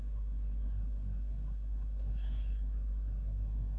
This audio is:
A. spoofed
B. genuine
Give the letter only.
A